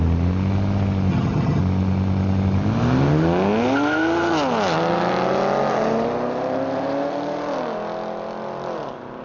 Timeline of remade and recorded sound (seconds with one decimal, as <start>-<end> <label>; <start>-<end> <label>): 0.0-1.1 recorded; 1.1-1.6 remade; 1.6-9.2 recorded